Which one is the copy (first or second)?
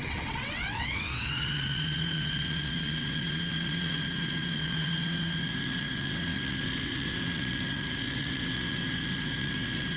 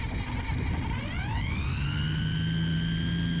first